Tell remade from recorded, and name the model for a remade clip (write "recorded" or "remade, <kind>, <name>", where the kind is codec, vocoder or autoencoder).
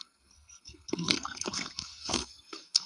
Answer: remade, codec, SNAC